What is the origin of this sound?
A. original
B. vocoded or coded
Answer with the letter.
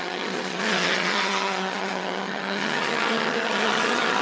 B